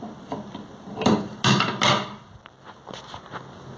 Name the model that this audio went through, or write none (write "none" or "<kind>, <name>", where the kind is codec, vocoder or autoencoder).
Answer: none